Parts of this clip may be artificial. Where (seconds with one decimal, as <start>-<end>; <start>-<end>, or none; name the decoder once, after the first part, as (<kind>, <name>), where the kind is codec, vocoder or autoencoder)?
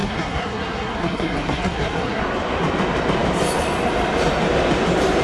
0.0-2.2 (codec, SNAC)